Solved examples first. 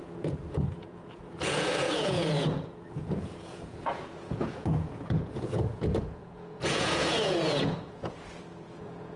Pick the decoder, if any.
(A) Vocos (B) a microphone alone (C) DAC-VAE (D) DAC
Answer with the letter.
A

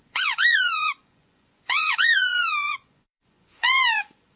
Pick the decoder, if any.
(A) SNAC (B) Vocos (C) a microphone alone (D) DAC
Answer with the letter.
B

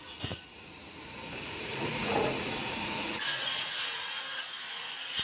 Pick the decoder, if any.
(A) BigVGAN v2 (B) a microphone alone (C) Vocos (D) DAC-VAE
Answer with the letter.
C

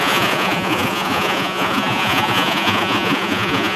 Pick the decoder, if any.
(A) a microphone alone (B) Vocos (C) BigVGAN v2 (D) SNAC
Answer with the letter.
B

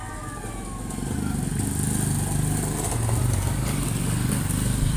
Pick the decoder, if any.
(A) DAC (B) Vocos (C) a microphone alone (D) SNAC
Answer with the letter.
C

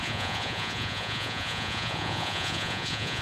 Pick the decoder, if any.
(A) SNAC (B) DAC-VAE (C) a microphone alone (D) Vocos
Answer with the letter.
D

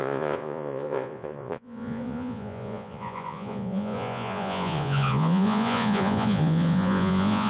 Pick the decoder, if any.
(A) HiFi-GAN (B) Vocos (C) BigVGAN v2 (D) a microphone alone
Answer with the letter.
B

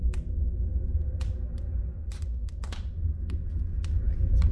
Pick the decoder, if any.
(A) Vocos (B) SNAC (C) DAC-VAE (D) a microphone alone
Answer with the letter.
D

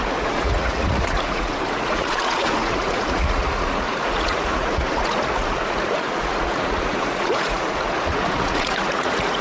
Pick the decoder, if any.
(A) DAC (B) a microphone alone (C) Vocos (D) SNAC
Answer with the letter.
C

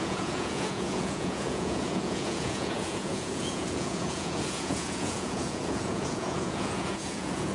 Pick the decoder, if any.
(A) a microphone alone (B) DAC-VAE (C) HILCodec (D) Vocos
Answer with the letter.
D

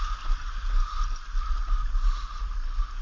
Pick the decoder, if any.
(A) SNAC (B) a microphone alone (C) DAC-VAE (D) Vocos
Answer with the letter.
B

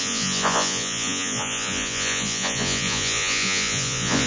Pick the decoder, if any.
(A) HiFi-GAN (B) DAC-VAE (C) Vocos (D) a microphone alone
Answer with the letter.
C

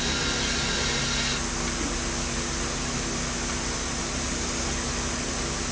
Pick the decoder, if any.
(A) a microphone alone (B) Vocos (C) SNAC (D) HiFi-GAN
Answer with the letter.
A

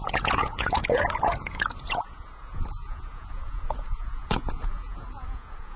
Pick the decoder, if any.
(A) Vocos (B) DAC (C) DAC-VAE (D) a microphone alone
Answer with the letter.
A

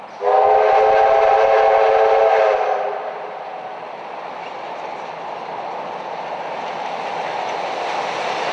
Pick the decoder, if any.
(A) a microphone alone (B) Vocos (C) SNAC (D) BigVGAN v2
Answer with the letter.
A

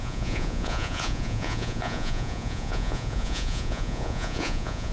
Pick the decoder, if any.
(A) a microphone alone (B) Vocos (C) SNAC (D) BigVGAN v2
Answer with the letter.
B